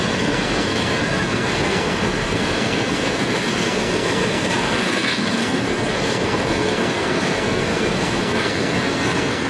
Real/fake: fake